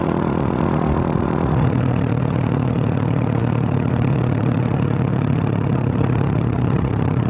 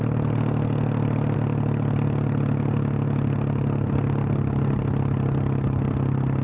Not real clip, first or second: first